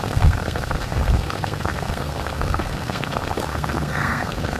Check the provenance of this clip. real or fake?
fake